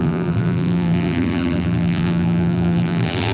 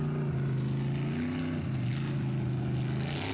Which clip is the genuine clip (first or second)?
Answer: second